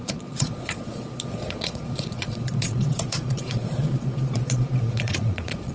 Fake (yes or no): yes